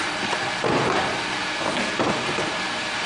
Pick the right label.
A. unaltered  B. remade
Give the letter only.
A